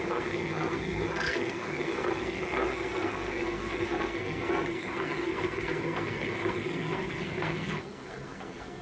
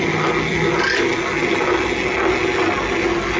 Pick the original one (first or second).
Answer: second